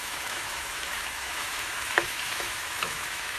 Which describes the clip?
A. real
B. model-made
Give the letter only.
B